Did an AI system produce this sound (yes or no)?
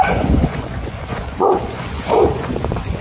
yes